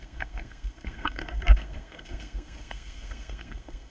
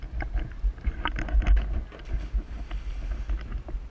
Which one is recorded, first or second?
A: second